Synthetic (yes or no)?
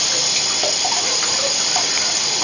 no